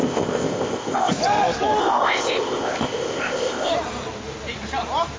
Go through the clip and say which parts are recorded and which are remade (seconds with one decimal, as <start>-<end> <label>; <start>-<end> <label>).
0.0-1.1 remade; 1.1-1.8 recorded; 1.8-3.7 remade; 3.7-5.2 recorded